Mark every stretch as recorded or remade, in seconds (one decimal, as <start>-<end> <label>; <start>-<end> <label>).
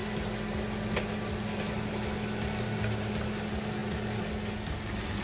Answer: 0.0-5.2 recorded